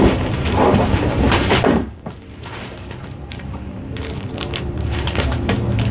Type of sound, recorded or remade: remade